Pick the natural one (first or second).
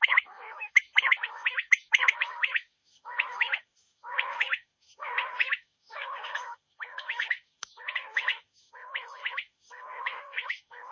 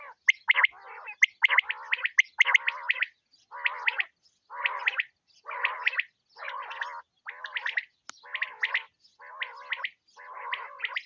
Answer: second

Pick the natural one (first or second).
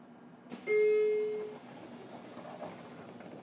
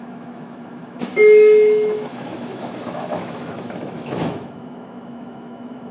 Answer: first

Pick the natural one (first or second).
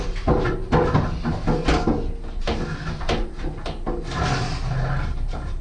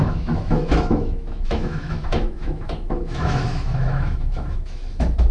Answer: first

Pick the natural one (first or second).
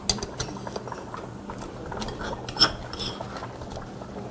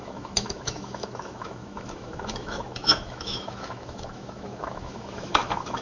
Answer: first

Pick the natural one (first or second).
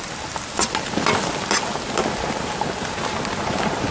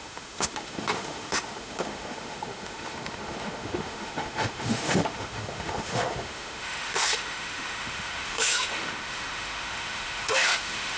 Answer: first